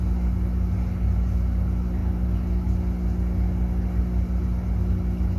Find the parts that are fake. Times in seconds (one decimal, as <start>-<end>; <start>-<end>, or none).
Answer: none